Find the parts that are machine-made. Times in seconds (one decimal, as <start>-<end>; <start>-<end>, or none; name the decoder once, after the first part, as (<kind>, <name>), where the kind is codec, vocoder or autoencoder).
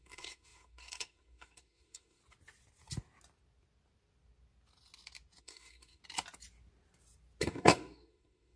0.0-2.2 (codec, SNAC); 5.4-6.0; 7.4-8.6